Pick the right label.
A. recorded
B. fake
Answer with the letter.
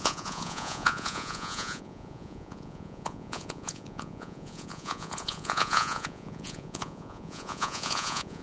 B